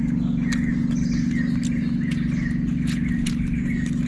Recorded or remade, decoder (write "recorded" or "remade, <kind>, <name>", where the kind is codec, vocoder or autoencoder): recorded